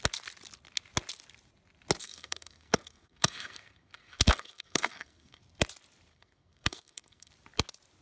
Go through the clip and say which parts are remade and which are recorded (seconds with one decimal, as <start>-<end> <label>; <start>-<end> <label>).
0.0-2.0 recorded; 2.0-5.4 remade; 5.4-6.1 recorded; 6.1-7.3 remade; 7.3-8.0 recorded